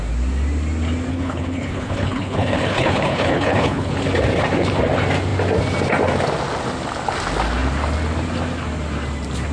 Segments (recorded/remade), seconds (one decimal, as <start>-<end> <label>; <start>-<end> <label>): 0.0-1.1 recorded; 1.1-3.9 remade; 3.9-9.5 recorded